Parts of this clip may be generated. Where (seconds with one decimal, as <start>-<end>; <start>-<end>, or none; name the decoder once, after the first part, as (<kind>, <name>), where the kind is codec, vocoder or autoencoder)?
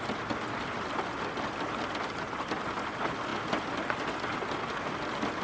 none